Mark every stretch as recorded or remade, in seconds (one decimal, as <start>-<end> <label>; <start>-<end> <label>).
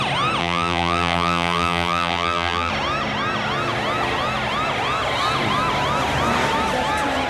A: 0.0-0.4 recorded; 0.4-2.7 remade; 2.7-7.3 recorded